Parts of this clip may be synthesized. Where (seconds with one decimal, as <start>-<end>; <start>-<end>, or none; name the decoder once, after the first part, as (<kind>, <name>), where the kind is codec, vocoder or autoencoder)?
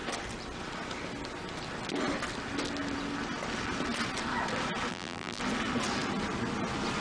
4.9-5.4 (vocoder, BigVGAN v2)